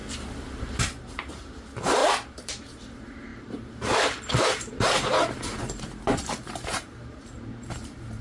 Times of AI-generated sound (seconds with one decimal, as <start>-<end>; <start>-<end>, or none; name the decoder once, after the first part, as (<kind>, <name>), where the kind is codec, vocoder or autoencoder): 0.0-8.2 (vocoder, BigVGAN v2)